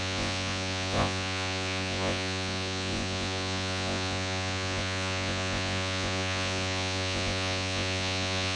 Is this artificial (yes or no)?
yes